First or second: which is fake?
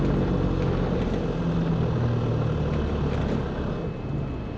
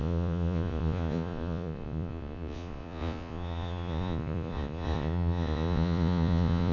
second